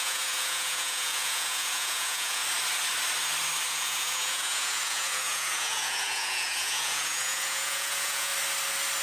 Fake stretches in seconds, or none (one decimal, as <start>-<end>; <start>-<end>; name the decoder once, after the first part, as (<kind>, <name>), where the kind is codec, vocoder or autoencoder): 0.0-2.4 (vocoder, Vocos); 3.7-8.3